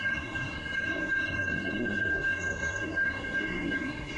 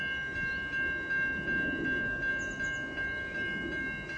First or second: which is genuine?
second